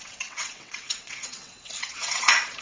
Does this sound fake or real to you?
fake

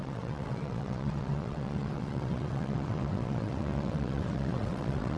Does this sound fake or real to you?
fake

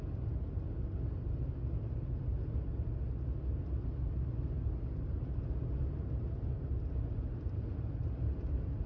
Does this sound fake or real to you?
real